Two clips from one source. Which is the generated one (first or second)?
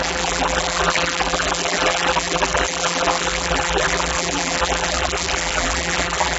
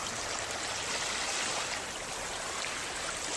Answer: first